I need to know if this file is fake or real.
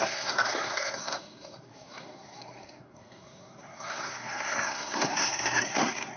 fake